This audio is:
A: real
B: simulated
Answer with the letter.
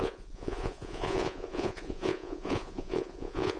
B